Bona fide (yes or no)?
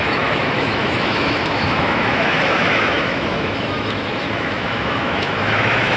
no